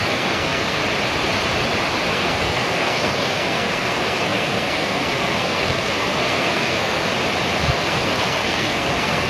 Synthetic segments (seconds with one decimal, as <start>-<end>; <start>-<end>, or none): 0.0-0.8; 2.1-7.1; 7.6-9.3